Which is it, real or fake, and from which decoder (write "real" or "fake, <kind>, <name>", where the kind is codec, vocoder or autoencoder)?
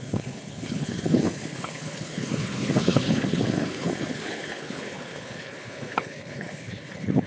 fake, codec, HILCodec